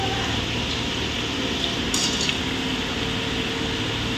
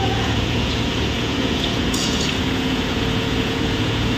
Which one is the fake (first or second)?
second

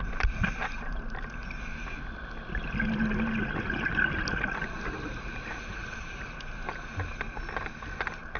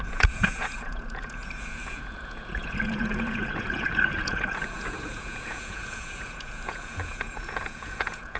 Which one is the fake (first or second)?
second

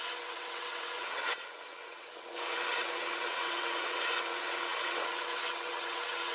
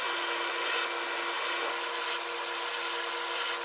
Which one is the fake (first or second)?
first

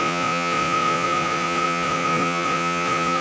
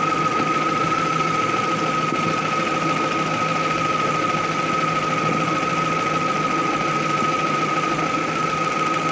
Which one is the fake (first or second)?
first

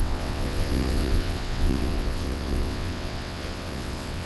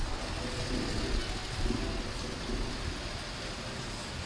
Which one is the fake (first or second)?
first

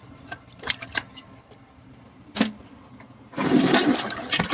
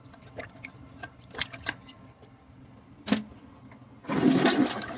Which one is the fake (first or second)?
first